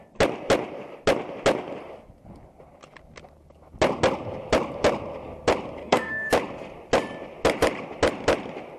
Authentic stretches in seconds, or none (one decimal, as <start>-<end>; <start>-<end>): 0.0-5.8; 6.3-8.8

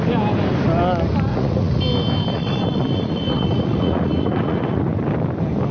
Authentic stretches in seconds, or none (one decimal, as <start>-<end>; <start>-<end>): 0.0-1.3; 1.8-2.3; 5.0-5.7

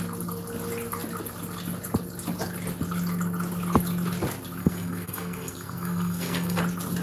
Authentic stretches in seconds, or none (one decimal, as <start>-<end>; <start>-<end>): 0.0-4.6; 6.6-7.0

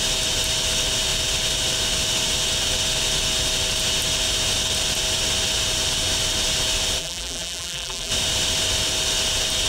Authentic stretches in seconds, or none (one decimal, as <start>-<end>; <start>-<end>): 0.0-7.0; 8.1-9.7

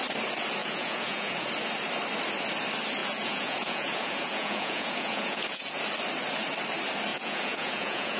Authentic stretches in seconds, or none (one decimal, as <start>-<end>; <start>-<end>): 0.0-0.6; 1.5-3.0; 5.7-7.1